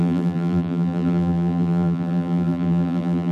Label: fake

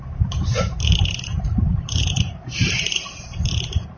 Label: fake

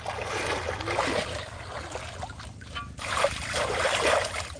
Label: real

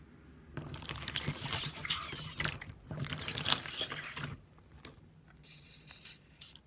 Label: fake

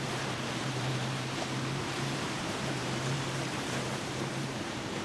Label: fake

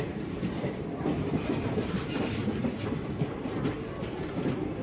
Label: fake